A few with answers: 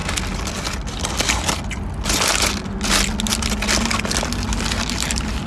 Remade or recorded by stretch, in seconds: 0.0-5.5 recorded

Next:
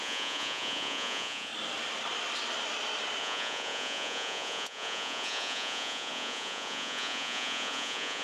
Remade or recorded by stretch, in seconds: 0.0-1.5 remade; 1.5-3.2 recorded; 3.2-8.2 remade

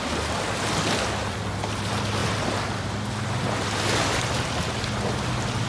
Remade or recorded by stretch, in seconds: 0.0-5.7 recorded

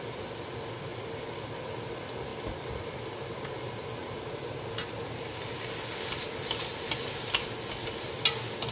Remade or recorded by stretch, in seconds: 0.0-8.7 recorded